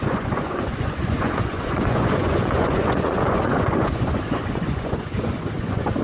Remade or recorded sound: remade